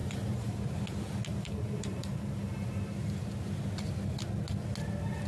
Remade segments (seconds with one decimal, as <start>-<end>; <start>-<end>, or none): 0.0-0.5; 1.3-2.8